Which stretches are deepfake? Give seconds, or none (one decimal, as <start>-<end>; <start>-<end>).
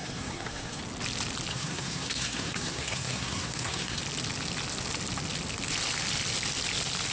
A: 0.0-0.8; 1.5-4.0